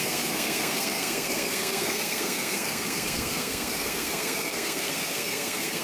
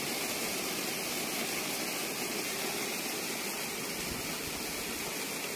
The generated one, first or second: first